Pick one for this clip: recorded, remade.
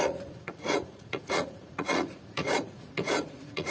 remade